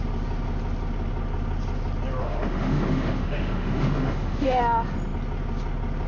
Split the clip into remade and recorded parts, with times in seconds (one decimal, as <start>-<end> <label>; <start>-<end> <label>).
0.0-2.2 recorded; 2.2-4.6 remade; 4.6-6.1 recorded